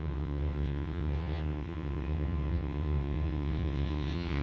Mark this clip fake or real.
fake